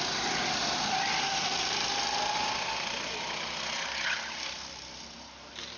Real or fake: real